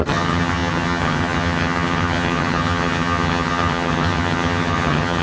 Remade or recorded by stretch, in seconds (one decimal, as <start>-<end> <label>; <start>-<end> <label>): 0.0-5.2 remade